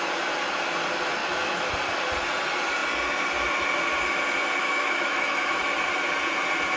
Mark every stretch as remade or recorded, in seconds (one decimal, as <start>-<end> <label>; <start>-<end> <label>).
0.0-1.2 recorded; 1.2-1.7 remade; 1.7-4.6 recorded; 4.6-5.6 remade; 5.6-6.8 recorded